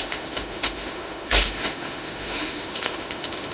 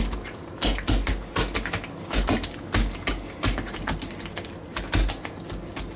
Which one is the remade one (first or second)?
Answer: first